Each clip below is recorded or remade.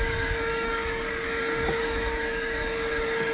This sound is remade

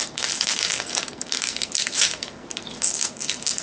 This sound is remade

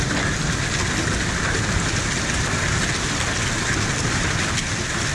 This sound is recorded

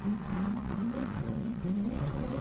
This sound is remade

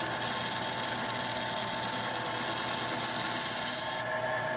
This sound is recorded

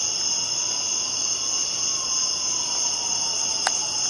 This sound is recorded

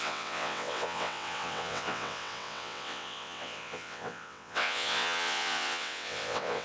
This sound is remade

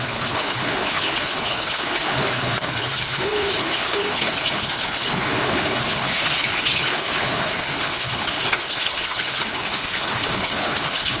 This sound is remade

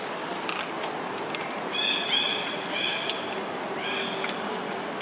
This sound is recorded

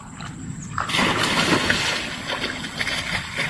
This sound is recorded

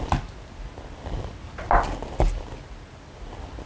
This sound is recorded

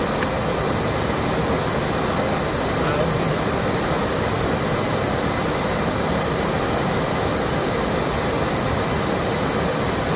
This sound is recorded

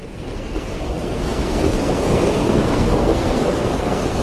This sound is remade